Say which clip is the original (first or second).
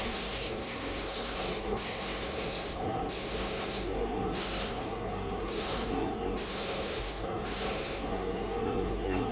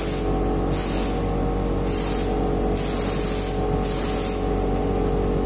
second